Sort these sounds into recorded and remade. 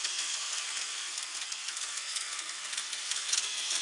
remade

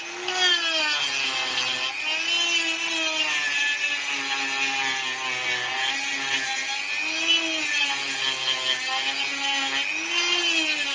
recorded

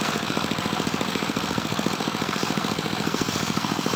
remade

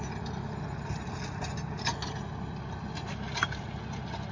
recorded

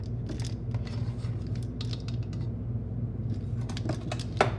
recorded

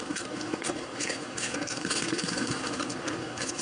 remade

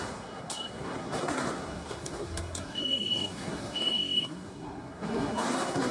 remade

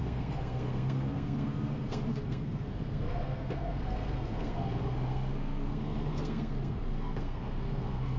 remade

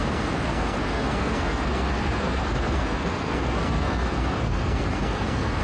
remade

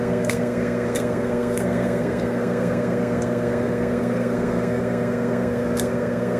remade